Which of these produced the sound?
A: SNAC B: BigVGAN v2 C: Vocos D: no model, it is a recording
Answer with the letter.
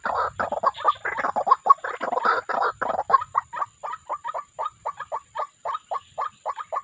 D